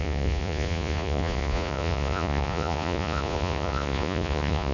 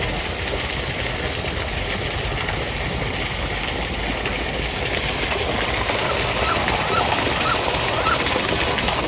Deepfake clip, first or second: first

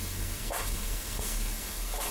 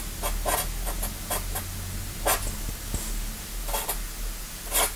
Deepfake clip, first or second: first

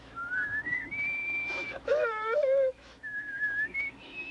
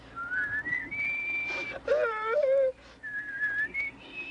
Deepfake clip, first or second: first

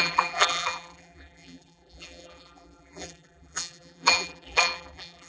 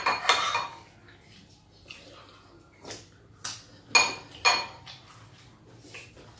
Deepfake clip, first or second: first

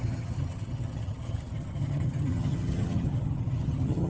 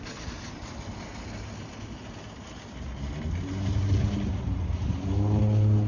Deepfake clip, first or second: first